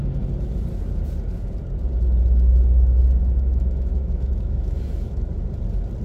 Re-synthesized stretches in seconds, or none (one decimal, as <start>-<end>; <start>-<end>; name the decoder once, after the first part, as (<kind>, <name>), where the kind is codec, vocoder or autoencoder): 3.2-5.3 (autoencoder, DAC-VAE)